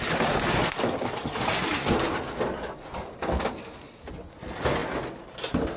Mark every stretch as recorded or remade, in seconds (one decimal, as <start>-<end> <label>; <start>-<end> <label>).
0.0-5.8 recorded